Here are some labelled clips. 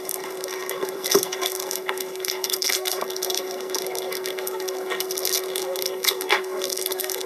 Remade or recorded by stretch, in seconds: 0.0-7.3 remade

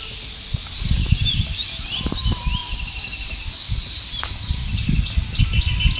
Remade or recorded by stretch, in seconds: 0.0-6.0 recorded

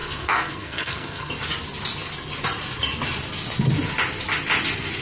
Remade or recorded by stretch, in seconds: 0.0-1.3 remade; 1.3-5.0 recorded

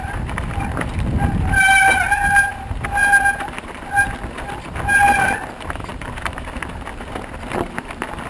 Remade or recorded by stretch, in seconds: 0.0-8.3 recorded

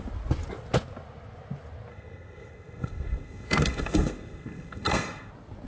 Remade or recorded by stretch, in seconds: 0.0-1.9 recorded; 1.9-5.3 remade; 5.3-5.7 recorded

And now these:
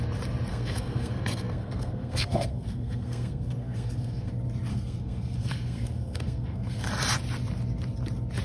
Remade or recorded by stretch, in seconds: 0.0-0.5 recorded; 0.5-4.3 remade; 4.3-4.7 recorded; 4.7-6.9 remade; 6.9-8.4 recorded

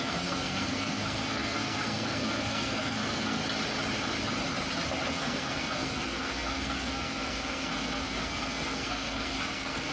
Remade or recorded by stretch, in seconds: 0.0-3.4 remade; 3.4-5.1 recorded; 5.1-9.9 remade